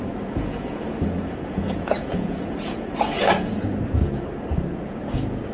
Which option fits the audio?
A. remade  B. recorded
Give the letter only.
A